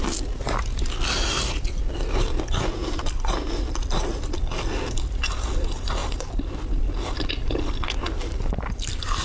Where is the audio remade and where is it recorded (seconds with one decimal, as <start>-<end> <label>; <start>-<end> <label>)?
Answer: 0.0-9.2 recorded